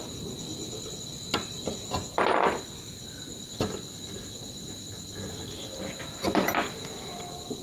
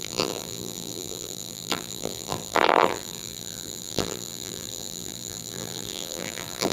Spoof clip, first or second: second